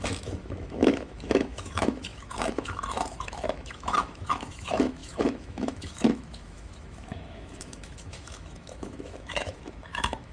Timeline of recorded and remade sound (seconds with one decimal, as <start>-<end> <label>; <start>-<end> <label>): 0.0-10.3 remade